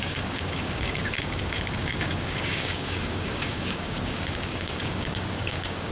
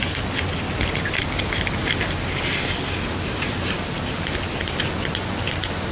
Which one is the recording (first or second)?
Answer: second